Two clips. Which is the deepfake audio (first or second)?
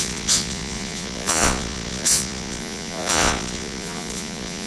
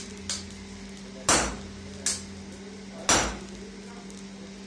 first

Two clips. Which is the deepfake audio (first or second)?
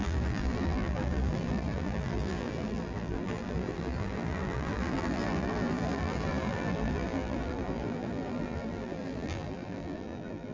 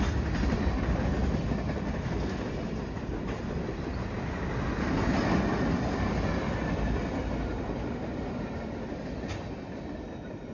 first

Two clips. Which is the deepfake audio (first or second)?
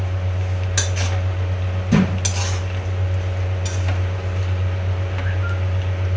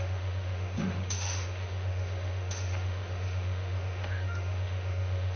second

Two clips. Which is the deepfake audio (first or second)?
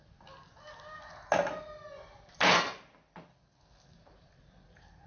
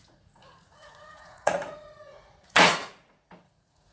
second